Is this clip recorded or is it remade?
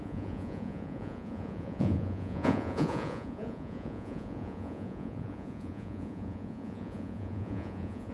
remade